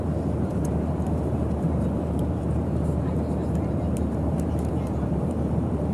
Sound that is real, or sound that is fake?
fake